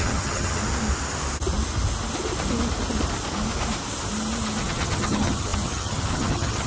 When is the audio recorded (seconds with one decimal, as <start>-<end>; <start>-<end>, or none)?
0.6-4.6